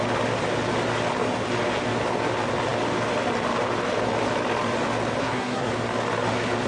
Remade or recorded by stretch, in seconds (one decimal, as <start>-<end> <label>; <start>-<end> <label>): 0.0-5.2 recorded; 5.2-5.7 remade; 5.7-6.7 recorded